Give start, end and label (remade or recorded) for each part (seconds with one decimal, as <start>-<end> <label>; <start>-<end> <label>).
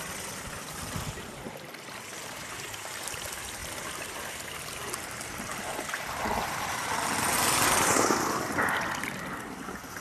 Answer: 0.0-10.0 recorded